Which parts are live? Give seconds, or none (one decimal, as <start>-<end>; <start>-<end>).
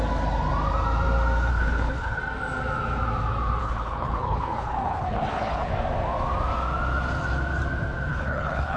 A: 0.0-1.5; 2.2-3.6; 5.7-8.1